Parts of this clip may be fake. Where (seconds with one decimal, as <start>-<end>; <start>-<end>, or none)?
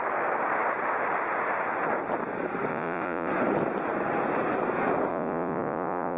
2.7-3.3; 5.1-6.2